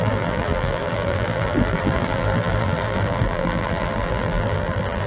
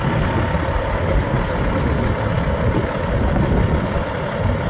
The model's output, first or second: first